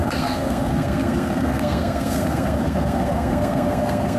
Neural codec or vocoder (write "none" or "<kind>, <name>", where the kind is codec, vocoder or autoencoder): codec, SNAC